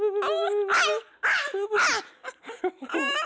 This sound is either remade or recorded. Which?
recorded